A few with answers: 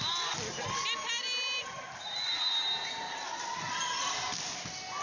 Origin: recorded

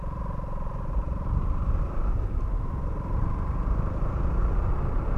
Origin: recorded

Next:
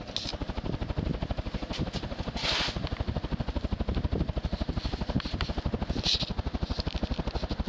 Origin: recorded